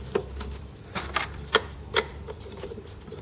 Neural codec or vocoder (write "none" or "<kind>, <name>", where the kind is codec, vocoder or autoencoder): vocoder, BigVGAN v2